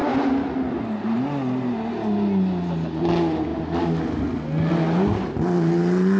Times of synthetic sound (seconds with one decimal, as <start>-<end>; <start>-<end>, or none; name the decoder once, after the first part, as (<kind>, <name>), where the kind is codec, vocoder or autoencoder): none